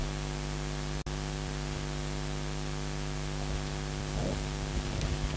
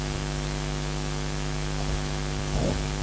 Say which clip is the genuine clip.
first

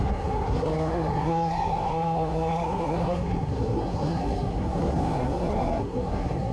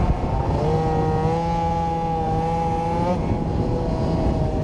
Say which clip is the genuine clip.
second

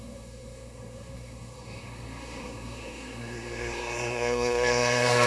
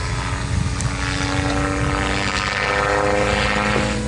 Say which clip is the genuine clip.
second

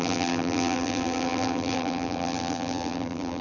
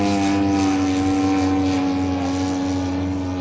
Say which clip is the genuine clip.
second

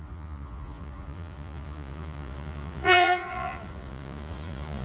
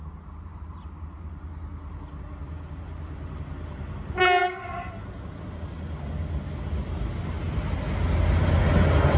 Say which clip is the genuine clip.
second